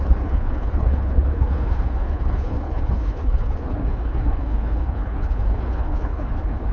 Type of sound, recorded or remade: remade